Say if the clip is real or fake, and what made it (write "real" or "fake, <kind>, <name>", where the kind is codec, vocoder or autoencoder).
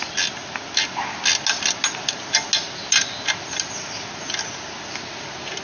real